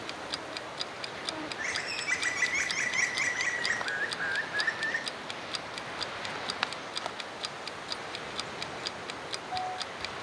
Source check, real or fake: real